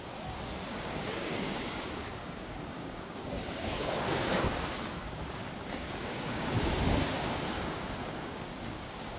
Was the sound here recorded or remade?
remade